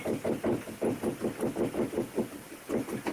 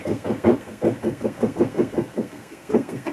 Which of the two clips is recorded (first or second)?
first